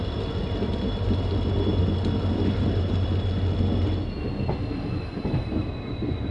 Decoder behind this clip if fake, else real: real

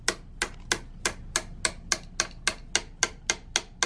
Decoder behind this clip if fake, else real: real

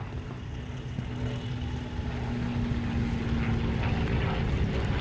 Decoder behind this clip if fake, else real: real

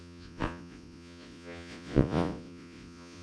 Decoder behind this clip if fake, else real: fake, vocoder, Vocos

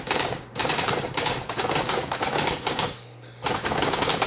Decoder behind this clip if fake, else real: fake, codec, DAC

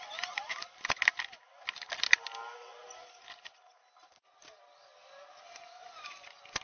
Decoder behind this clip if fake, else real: real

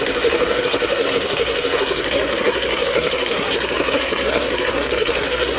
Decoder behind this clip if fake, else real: fake, codec, SNAC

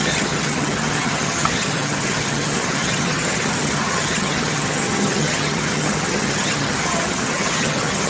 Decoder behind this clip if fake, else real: fake, vocoder, HiFi-GAN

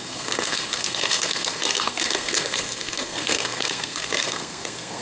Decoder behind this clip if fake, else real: fake, codec, SNAC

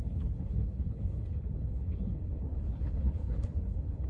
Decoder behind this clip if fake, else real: fake, codec, HILCodec